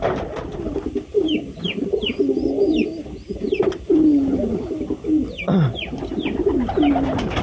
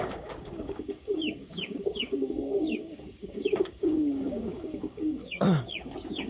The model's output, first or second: second